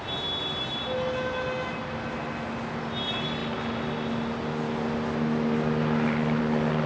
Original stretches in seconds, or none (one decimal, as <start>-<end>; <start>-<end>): 0.0-6.9